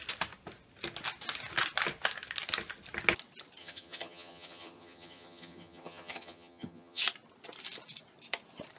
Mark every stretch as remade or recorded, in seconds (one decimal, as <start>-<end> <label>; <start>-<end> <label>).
0.0-3.6 recorded; 3.6-7.0 remade; 7.0-8.8 recorded

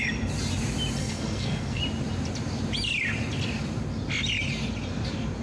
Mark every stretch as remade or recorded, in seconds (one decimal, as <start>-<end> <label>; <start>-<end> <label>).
0.0-1.0 recorded; 1.0-1.8 remade; 1.8-5.4 recorded

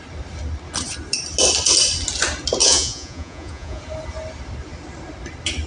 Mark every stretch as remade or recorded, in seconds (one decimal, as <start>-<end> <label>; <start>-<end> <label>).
0.0-2.6 recorded; 2.6-3.8 remade; 3.8-5.7 recorded

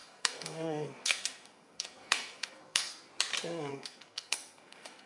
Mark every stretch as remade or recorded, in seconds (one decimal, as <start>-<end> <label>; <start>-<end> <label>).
0.0-3.1 remade; 3.1-3.7 recorded; 3.7-5.1 remade